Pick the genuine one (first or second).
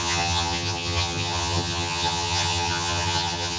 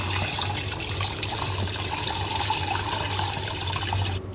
second